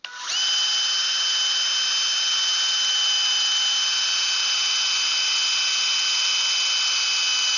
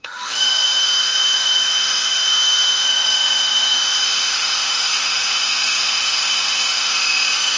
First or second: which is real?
first